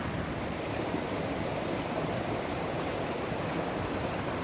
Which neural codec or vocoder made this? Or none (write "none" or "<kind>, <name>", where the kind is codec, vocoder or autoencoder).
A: vocoder, BigVGAN v2